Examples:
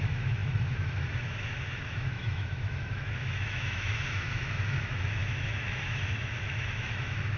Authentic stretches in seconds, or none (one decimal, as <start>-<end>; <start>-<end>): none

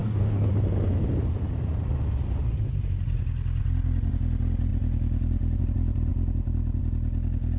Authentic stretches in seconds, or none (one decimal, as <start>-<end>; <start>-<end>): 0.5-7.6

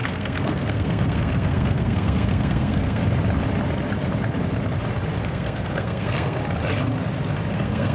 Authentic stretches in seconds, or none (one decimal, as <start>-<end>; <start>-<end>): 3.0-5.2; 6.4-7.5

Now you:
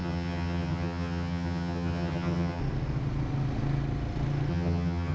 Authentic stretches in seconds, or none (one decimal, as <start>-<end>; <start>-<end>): 2.6-4.5

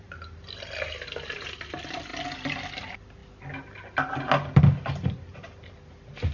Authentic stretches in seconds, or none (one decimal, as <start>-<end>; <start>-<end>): 0.0-6.3

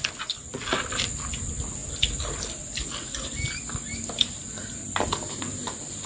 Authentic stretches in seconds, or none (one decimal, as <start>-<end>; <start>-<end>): 0.0-6.1

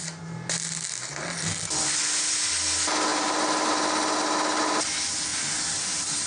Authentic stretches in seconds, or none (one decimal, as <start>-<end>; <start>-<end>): 0.0-6.3

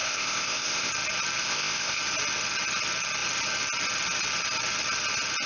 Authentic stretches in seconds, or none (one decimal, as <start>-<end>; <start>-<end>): 0.9-1.4; 2.0-5.5